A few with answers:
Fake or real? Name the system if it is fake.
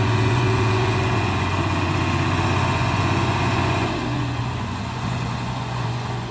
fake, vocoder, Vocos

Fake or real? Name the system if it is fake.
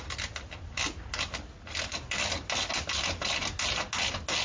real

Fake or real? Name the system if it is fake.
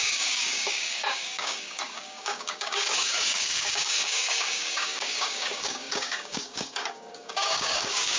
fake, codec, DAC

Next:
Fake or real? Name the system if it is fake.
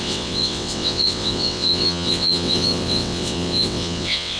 fake, vocoder, WaveNeXt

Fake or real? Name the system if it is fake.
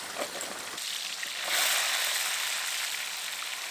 real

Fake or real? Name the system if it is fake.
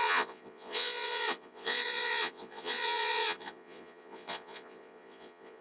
fake, vocoder, Vocos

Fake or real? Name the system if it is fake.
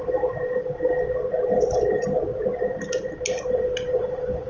real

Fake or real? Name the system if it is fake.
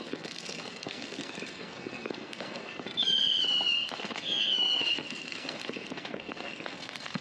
fake, codec, SNAC